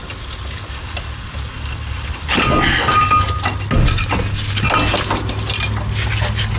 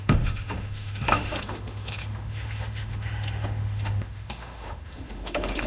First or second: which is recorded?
first